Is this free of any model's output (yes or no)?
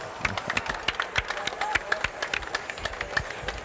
yes